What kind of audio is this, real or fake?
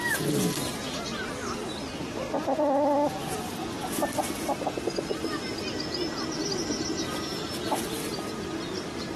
real